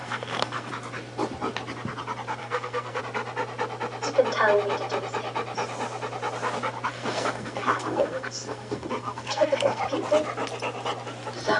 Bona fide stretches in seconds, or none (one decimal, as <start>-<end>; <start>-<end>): 0.7-2.4; 3.0-6.9; 9.8-11.6

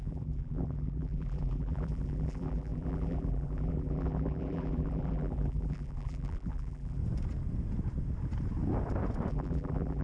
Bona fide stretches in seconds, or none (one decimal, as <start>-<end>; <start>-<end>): 7.0-9.3

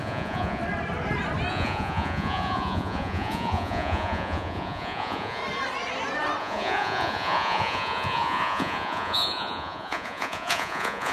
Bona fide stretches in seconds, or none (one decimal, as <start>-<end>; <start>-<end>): 0.6-1.5; 5.4-6.4